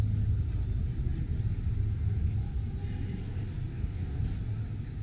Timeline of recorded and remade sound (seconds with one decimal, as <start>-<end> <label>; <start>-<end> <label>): 0.0-3.7 recorded; 3.7-4.2 remade; 4.2-5.0 recorded